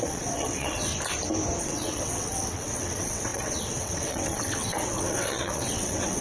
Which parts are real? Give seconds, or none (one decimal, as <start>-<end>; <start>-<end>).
0.9-1.6